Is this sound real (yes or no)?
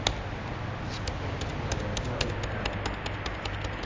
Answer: yes